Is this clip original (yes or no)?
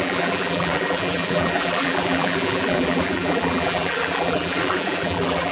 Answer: no